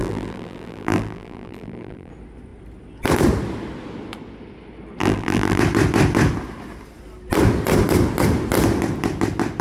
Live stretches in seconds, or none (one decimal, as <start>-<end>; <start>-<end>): 2.1-5.0; 5.6-9.6